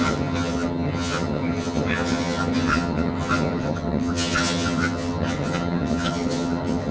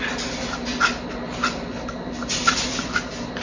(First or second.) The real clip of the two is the second